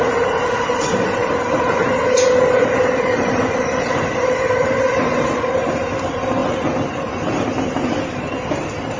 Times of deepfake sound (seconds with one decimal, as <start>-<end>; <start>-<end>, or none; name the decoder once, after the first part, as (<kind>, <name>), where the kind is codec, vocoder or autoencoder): 0.0-1.2 (vocoder, BigVGAN v2); 2.8-9.0